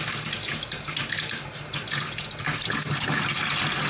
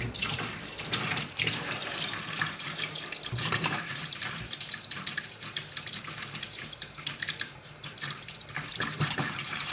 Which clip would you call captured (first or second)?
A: first